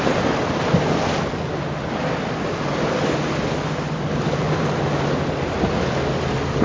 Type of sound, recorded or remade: recorded